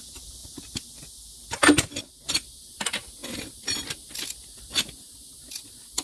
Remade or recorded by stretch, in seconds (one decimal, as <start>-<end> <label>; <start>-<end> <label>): 0.0-6.0 recorded

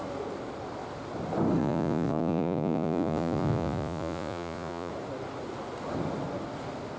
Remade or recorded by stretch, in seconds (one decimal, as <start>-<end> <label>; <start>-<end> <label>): 0.0-1.6 recorded; 1.6-4.9 remade; 4.9-7.0 recorded